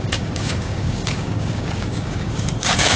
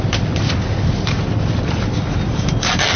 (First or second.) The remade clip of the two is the first